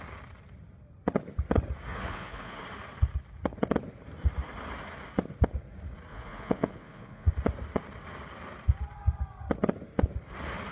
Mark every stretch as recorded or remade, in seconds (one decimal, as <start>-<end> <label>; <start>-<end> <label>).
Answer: 0.0-1.9 recorded; 1.9-2.6 remade; 2.6-6.1 recorded; 6.1-7.3 remade; 7.3-10.7 recorded